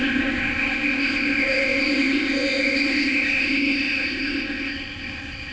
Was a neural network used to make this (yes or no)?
yes